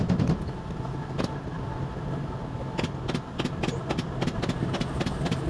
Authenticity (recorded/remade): recorded